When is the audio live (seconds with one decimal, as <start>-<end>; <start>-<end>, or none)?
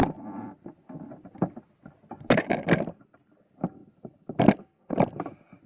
none